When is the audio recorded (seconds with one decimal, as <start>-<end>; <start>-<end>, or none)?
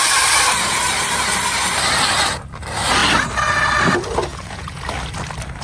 0.0-4.3; 4.8-5.6